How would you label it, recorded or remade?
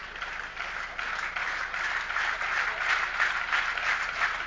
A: recorded